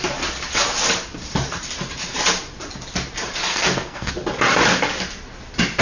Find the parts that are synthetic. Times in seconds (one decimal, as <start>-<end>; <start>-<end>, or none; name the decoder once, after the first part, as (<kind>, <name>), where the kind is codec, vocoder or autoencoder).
3.5-4.1 (codec, SNAC)